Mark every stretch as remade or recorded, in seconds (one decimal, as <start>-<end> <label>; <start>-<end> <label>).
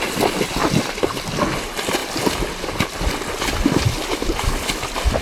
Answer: 0.0-2.0 recorded; 2.0-5.2 remade